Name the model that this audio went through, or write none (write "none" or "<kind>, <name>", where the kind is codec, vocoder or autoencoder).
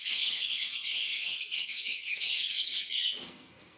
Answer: codec, SNAC